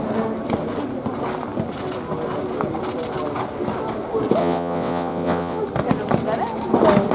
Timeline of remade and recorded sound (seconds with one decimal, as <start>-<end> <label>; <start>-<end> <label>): 0.0-4.4 recorded; 4.4-5.6 remade; 5.6-7.1 recorded